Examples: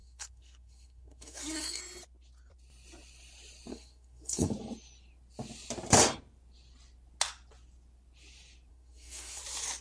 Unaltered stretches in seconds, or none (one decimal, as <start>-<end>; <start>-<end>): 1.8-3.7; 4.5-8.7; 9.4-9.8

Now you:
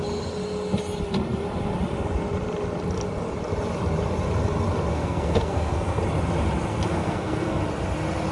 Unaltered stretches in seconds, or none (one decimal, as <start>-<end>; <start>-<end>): 0.0-4.9; 6.0-6.7; 7.6-8.3

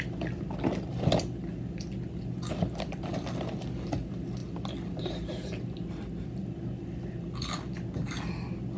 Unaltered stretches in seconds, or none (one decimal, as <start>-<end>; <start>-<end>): 0.0-8.8

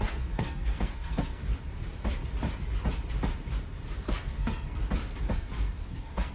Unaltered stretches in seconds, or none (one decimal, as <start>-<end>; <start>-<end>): 1.4-4.0; 4.8-5.3